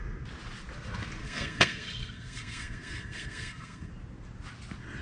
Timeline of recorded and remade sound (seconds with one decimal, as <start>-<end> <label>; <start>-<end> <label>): 0.0-1.2 recorded; 1.2-3.9 remade; 3.9-5.0 recorded